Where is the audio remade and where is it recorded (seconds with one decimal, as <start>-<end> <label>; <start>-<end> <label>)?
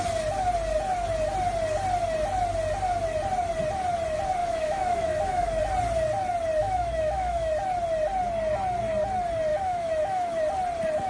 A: 0.0-4.4 recorded; 4.4-5.6 remade; 5.6-6.6 recorded; 6.6-7.5 remade; 7.5-9.5 recorded; 9.5-10.4 remade; 10.4-11.1 recorded